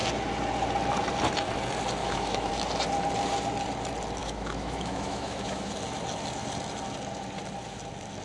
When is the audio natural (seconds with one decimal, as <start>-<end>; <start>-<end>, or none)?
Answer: 0.0-2.0; 2.5-4.2; 5.7-8.2